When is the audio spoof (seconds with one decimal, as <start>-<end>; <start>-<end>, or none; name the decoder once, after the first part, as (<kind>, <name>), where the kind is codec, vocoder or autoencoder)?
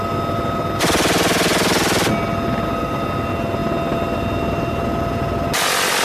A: none